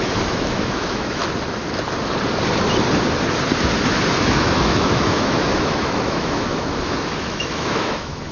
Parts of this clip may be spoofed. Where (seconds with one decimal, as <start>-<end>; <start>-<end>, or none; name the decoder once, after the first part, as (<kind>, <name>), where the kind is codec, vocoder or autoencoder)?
0.0-1.2 (autoencoder, DAC-VAE); 4.2-8.3